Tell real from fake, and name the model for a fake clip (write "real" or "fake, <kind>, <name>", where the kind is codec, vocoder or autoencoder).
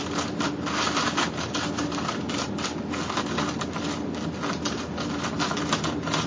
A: real